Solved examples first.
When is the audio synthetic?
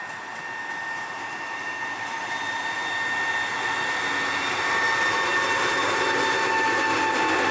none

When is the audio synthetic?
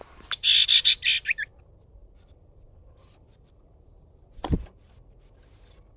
none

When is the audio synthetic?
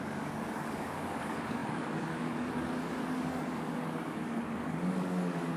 0.0-5.6 (codec, DAC)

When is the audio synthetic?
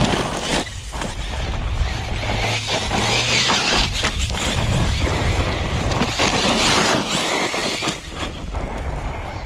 none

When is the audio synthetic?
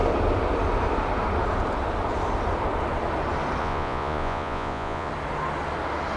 3.6-5.1 (vocoder, Vocos)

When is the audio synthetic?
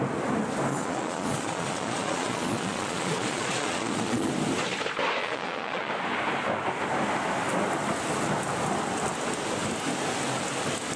0.7-4.3 (vocoder, Vocos); 5.2-5.9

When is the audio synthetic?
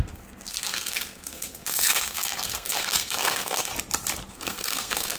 0.0-3.7 (codec, SNAC); 4.3-5.2